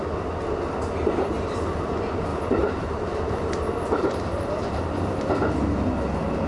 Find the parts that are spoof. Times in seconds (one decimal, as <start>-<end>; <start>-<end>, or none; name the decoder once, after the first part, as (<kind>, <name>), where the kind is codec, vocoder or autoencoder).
1.0-1.9 (vocoder, BigVGAN v2); 2.3-4.8

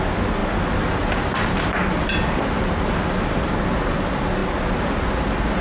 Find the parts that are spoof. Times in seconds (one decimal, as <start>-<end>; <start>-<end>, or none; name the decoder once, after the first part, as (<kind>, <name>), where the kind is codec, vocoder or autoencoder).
none